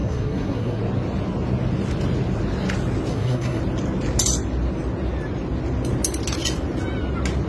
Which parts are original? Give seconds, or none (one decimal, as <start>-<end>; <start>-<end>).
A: 0.8-3.1; 3.6-7.5